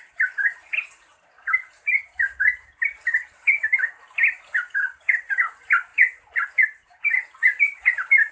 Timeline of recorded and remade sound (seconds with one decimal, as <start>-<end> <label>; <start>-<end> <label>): 0.0-5.9 recorded; 5.9-8.3 remade